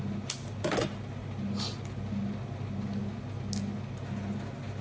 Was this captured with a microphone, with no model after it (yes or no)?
yes